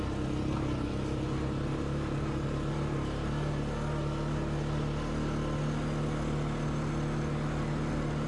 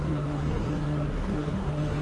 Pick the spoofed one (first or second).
second